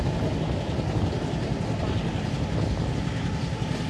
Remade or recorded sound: recorded